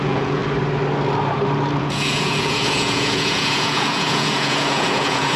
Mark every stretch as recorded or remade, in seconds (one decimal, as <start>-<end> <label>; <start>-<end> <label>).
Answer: 0.0-0.4 remade; 0.4-1.8 recorded; 1.8-5.4 remade